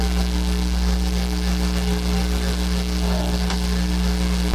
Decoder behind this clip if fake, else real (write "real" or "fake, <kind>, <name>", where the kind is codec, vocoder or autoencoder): fake, codec, SNAC